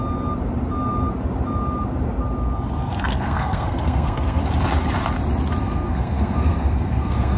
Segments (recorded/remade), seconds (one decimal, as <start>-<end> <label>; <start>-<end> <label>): 0.0-3.1 recorded; 3.1-4.4 remade; 4.4-5.6 recorded; 5.6-7.4 remade